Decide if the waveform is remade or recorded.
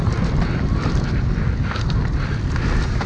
recorded